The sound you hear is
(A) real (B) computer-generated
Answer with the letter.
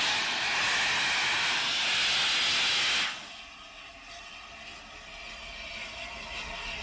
A